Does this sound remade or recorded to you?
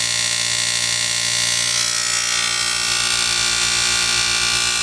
recorded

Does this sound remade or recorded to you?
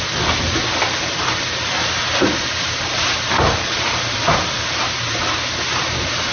recorded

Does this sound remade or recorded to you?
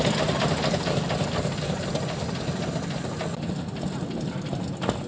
recorded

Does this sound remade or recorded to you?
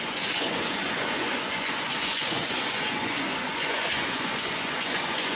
remade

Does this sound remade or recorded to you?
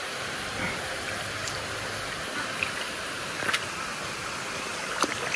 recorded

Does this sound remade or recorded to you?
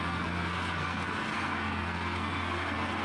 remade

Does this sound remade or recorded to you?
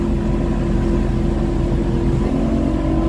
recorded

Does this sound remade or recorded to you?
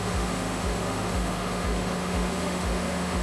remade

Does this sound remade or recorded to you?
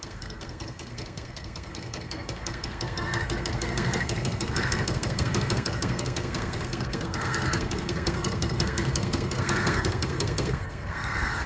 remade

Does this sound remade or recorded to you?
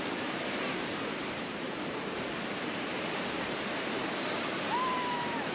remade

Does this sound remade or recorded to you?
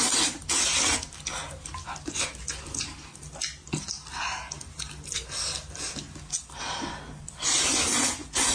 recorded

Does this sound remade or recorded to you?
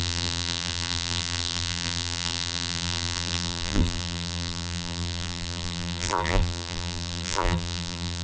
remade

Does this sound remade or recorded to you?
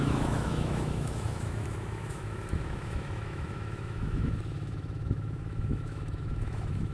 remade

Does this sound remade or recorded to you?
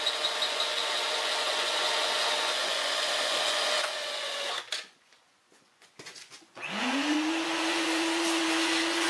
remade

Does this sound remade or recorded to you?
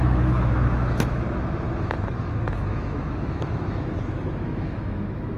remade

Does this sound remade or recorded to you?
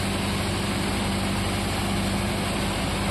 recorded